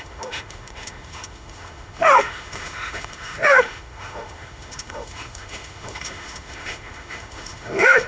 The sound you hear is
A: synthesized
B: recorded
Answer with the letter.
A